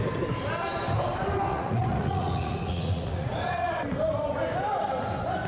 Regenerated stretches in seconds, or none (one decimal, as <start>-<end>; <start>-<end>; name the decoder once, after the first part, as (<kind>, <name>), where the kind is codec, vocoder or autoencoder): 1.5-3.7 (vocoder, Vocos)